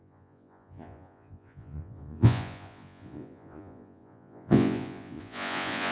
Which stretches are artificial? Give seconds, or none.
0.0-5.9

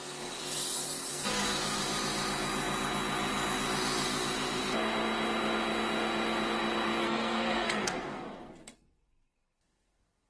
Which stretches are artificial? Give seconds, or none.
0.0-0.4; 1.1-1.8; 7.0-10.3

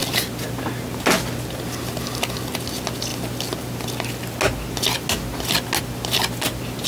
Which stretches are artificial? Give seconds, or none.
none

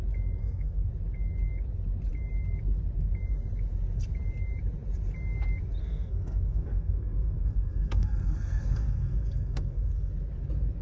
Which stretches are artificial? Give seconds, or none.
0.4-0.9; 5.8-10.1

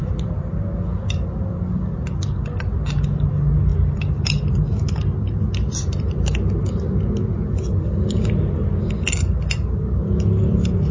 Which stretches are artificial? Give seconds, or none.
none

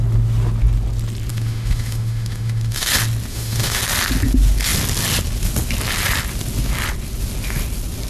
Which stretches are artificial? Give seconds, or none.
1.3-2.9; 3.3-3.8